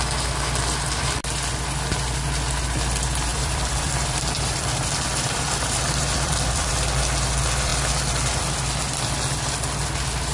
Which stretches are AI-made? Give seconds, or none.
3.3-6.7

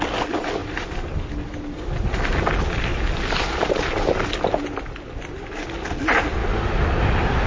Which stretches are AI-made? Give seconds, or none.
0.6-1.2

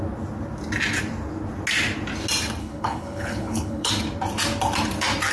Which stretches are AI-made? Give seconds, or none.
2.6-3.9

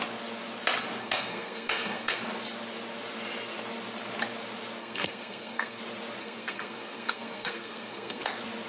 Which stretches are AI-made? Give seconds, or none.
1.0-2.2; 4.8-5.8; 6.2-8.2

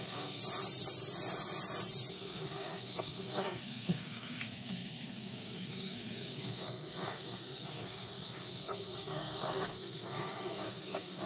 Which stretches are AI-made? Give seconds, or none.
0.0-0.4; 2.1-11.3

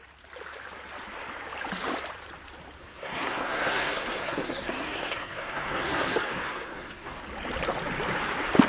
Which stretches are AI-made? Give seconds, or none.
2.8-7.2

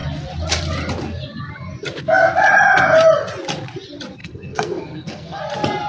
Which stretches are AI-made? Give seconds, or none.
4.2-5.4